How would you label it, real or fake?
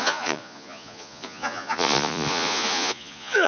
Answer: fake